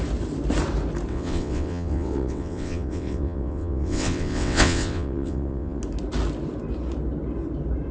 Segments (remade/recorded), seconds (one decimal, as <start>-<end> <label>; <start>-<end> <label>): 0.0-1.1 recorded; 1.1-5.8 remade; 5.8-7.9 recorded